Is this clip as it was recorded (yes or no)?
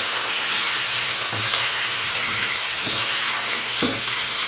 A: no